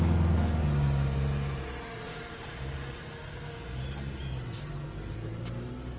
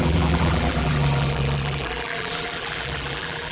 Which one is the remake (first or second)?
second